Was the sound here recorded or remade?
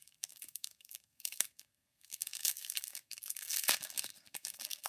remade